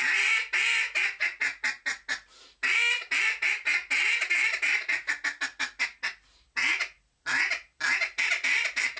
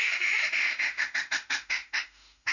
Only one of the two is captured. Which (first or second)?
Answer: first